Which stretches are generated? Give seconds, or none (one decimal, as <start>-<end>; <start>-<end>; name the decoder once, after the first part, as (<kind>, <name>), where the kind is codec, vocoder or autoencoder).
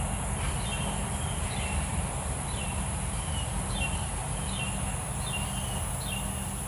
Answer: 1.9-4.1 (vocoder, BigVGAN v2)